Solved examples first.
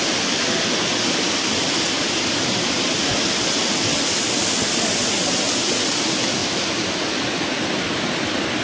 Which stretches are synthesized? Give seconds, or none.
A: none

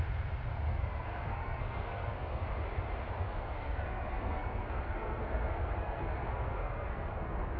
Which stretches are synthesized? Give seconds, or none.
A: 0.7-2.5 (codec, SNAC); 3.2-7.6

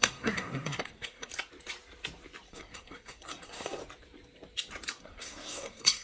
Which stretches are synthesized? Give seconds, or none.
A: 0.0-1.3 (codec, SNAC); 2.5-3.8; 5.0-6.0

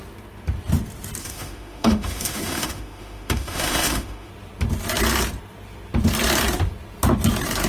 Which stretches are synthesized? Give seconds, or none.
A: 1.2-4.3 (autoencoder, DAC-VAE)